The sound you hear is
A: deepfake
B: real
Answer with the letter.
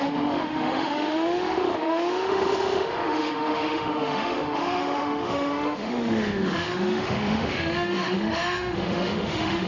A